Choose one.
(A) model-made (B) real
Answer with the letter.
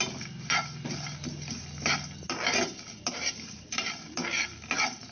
B